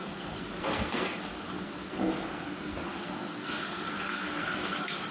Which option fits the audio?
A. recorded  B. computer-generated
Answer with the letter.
B